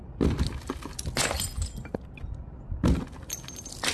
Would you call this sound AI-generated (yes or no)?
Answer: no